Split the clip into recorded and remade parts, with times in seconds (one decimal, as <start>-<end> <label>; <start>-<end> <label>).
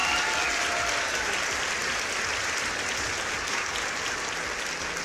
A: 0.0-5.0 recorded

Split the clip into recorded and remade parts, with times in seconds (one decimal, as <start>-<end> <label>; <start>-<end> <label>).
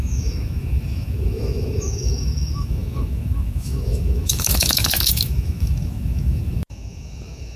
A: 0.0-7.6 remade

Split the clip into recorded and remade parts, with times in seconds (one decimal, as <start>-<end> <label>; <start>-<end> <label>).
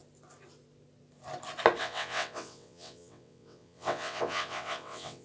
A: 0.0-1.8 recorded; 1.8-5.2 remade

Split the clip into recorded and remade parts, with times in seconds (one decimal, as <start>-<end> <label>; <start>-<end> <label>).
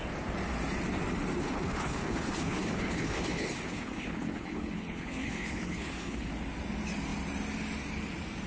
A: 0.0-1.4 recorded; 1.4-6.3 remade; 6.3-8.5 recorded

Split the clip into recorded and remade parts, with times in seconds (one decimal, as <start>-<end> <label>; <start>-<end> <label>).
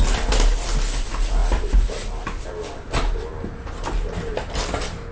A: 0.0-5.1 recorded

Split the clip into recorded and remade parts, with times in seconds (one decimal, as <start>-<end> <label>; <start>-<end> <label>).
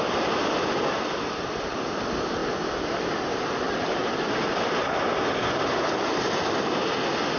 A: 0.0-7.4 recorded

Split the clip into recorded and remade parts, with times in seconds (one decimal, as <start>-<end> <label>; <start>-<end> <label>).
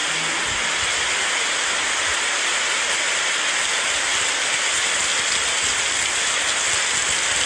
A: 0.0-7.5 recorded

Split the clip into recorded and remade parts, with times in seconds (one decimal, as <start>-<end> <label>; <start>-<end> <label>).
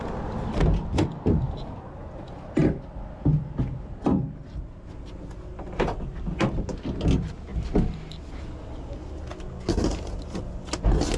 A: 0.0-11.2 recorded